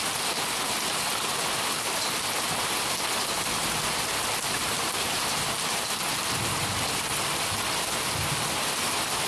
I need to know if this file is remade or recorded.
recorded